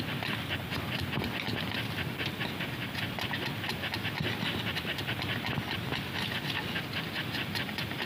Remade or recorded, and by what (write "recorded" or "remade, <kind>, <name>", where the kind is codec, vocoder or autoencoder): recorded